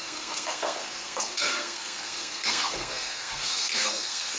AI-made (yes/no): yes